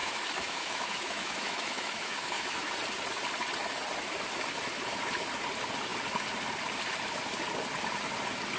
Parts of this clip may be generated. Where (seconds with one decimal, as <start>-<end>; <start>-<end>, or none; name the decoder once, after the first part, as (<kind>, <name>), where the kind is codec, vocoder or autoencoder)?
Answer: 0.0-2.7 (autoencoder, DAC-VAE)